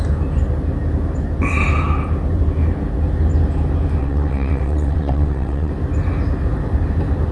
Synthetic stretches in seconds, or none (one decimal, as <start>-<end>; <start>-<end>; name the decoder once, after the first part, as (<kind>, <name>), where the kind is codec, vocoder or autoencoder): 4.0-5.7 (vocoder, WaveNeXt)